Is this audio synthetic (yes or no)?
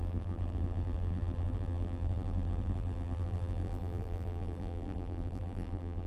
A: yes